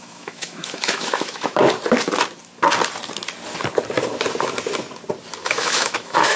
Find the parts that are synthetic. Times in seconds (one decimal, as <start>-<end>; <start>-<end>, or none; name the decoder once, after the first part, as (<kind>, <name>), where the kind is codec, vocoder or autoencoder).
0.0-1.6 (autoencoder, DAC-VAE); 5.4-6.4